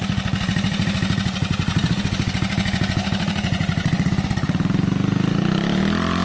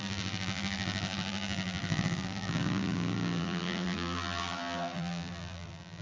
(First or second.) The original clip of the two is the first